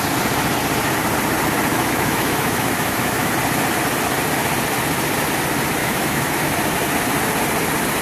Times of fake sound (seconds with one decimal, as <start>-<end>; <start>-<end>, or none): 1.7-3.3; 5.8-6.3